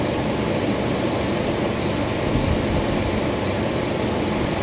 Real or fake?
real